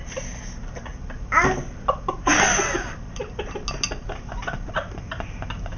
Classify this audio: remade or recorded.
recorded